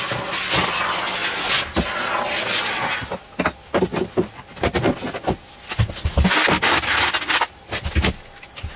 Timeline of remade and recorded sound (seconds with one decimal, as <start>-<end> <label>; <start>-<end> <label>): 0.0-8.8 recorded